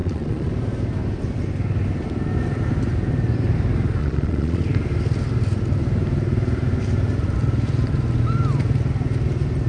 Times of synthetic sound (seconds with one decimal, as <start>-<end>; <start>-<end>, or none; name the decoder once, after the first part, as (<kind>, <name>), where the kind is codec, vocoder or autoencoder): 0.0-0.5 (vocoder, Vocos); 4.0-4.6